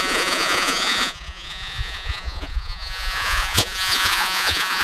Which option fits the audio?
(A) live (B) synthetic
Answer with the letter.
B